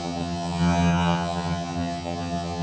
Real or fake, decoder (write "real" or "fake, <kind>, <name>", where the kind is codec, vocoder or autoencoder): fake, vocoder, HiFi-GAN